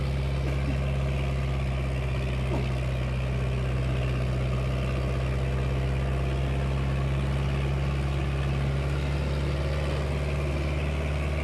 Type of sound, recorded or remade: recorded